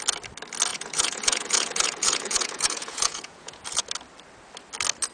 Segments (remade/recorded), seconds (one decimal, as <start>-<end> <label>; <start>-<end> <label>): 0.0-0.7 recorded; 0.7-3.8 remade; 3.8-5.1 recorded